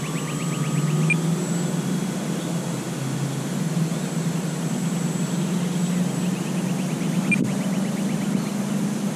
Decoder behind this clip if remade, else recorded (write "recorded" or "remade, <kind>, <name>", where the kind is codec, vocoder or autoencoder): recorded